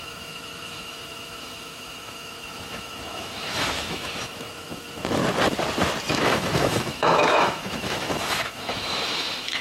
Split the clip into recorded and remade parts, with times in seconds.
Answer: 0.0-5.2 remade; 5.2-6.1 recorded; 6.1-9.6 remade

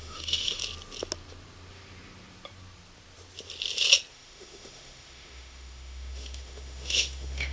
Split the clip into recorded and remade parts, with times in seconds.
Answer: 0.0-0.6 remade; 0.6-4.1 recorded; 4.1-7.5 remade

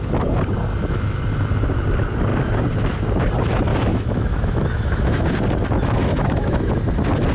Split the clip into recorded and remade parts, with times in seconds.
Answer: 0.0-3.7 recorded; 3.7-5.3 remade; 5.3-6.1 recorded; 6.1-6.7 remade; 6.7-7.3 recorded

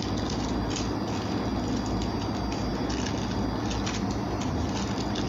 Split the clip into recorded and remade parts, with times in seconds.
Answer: 0.0-5.3 recorded

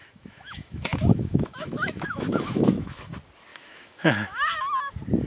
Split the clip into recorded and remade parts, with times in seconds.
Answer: 0.0-3.0 remade; 3.0-3.5 recorded; 3.5-4.6 remade; 4.6-5.3 recorded

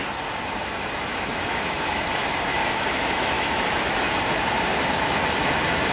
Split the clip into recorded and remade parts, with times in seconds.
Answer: 0.0-1.1 recorded; 1.1-2.0 remade; 2.0-2.6 recorded; 2.6-4.1 remade; 4.1-5.9 recorded

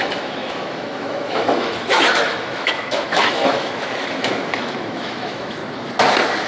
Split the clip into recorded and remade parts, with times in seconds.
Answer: 0.0-5.6 remade; 5.6-6.5 recorded